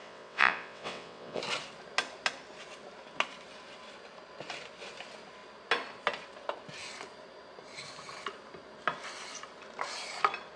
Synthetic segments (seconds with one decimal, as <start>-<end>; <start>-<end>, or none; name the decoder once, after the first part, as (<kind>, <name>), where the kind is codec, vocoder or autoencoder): 0.0-1.4 (vocoder, WaveNeXt)